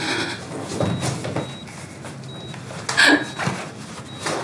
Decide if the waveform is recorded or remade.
recorded